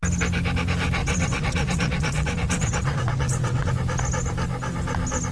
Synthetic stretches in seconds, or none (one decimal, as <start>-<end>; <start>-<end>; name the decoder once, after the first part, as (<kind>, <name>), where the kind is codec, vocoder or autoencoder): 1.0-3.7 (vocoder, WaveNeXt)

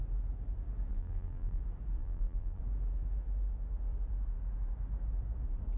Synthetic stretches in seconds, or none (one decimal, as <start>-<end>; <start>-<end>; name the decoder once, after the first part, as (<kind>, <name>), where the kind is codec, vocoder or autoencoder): 0.9-1.6 (vocoder, BigVGAN v2); 2.0-2.6

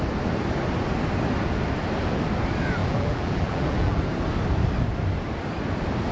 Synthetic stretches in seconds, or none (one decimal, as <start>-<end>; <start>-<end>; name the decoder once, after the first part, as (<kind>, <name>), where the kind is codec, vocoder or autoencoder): 2.8-4.0 (vocoder, BigVGAN v2)

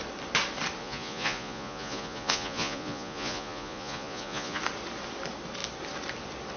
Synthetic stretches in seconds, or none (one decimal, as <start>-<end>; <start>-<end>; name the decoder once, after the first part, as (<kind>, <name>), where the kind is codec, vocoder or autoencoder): 0.8-4.6 (vocoder, Vocos)